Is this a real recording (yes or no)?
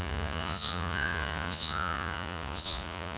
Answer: no